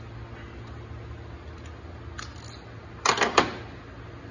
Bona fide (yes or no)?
yes